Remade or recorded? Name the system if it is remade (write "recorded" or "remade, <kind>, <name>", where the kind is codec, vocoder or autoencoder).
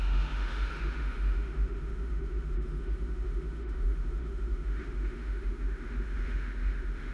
remade, autoencoder, DAC-VAE